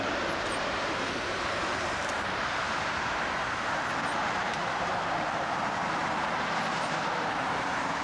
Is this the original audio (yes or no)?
no